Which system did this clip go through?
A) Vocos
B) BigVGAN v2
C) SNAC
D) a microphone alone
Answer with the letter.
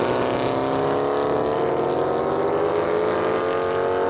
D